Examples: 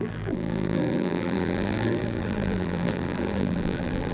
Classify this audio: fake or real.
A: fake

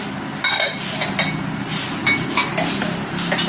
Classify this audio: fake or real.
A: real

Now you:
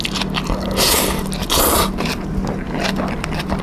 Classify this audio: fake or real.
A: real